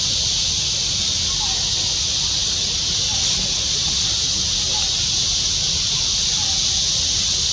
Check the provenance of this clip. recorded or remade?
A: recorded